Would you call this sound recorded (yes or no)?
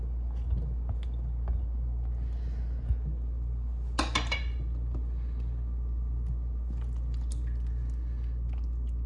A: yes